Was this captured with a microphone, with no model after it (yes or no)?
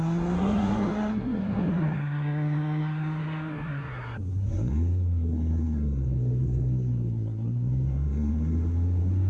no